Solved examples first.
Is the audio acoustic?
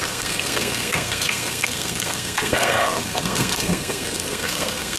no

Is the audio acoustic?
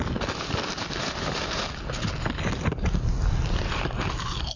yes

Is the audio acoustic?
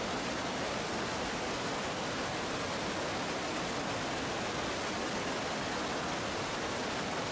yes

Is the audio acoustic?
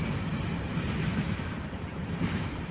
no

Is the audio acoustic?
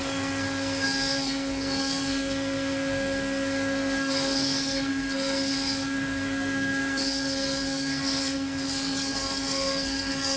no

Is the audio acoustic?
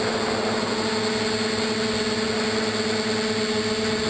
yes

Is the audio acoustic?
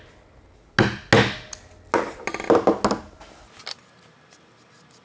yes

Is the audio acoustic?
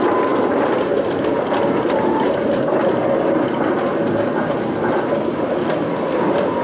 yes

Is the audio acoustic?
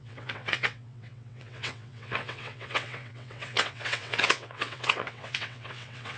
no